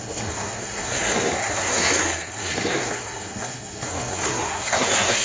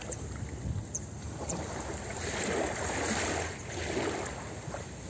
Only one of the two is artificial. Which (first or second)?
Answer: first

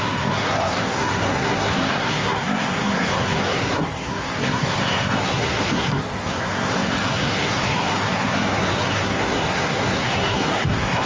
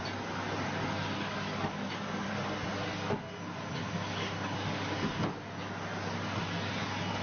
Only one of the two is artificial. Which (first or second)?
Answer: first